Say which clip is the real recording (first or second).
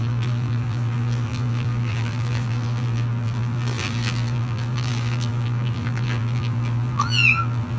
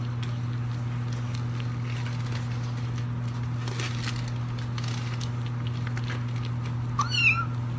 second